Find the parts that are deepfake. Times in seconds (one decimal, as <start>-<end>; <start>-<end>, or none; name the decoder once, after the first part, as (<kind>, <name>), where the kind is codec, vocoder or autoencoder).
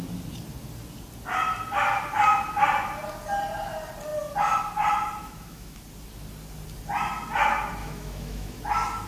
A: 5.2-5.8 (autoencoder, DAC-VAE); 7.8-8.6